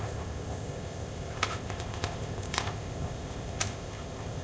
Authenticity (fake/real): fake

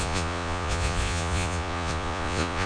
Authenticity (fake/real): fake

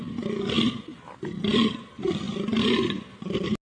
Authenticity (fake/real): real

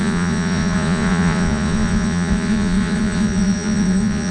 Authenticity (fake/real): fake